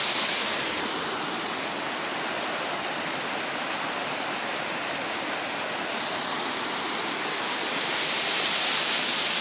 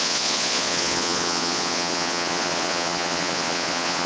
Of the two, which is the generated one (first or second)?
second